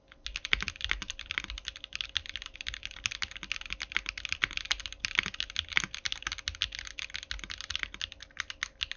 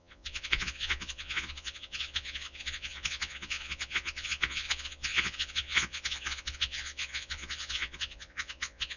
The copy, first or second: second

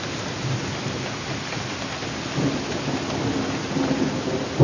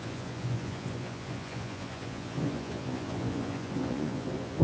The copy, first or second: second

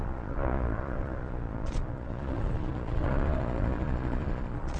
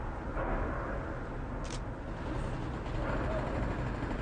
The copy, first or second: first